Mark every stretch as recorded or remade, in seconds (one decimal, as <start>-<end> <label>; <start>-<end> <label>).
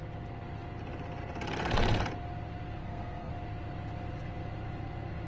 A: 0.0-2.8 recorded; 2.8-3.3 remade; 3.3-5.3 recorded